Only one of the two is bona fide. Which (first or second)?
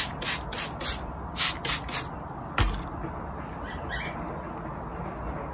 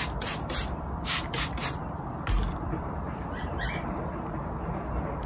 first